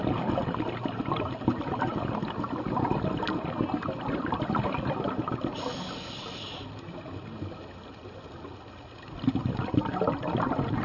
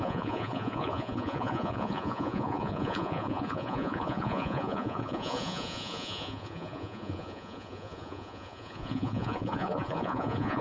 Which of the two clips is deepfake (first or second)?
second